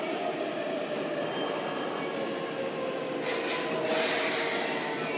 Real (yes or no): yes